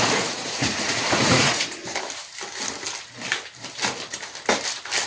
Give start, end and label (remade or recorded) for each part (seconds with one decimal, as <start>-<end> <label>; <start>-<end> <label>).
0.0-1.8 remade; 1.8-5.1 recorded